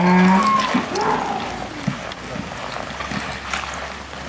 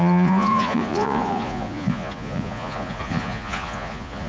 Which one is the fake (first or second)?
second